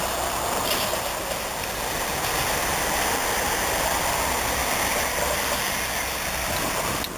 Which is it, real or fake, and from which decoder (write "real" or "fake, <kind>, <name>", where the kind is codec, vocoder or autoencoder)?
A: real